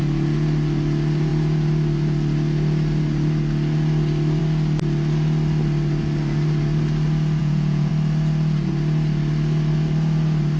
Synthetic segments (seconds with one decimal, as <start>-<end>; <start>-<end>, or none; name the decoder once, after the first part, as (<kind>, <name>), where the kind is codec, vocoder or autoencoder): 7.4-7.9 (vocoder, Vocos)